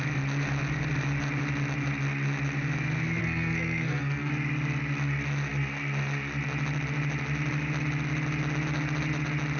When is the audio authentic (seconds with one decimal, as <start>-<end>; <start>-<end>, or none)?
0.0-3.2; 4.3-9.6